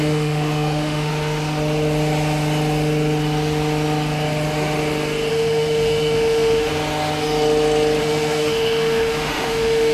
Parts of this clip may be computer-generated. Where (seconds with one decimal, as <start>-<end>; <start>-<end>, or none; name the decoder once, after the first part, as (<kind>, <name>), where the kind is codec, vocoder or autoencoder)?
0.0-1.1 (autoencoder, DAC-VAE); 5.3-6.7; 8.0-9.9